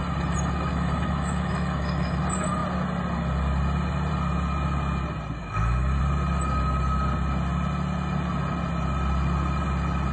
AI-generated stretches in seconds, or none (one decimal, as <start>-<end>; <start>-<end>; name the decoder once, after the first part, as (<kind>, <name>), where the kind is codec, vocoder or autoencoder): 0.7-2.2 (autoencoder, DAC-VAE); 5.4-6.0